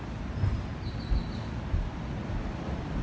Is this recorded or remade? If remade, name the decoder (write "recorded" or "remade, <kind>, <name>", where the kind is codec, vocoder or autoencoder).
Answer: recorded